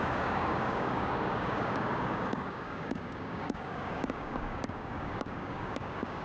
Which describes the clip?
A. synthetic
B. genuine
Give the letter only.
A